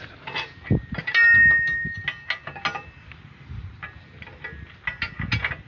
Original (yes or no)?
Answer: yes